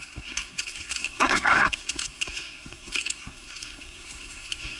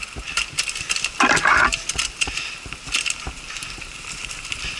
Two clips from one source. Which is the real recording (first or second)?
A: second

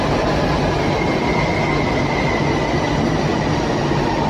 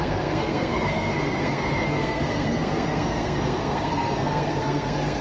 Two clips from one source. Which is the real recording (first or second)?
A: first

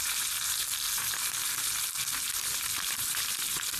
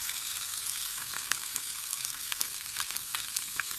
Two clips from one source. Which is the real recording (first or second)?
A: first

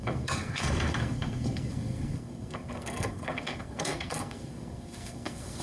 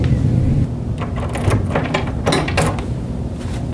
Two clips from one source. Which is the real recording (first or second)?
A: second